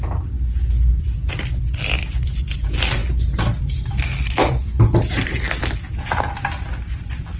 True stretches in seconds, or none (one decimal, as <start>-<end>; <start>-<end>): 0.0-7.4